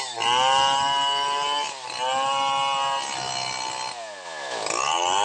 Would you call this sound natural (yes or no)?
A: yes